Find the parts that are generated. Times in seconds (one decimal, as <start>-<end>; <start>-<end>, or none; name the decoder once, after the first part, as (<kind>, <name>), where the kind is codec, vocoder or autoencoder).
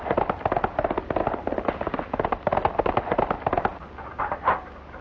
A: none